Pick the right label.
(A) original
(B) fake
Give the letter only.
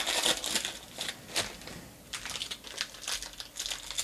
A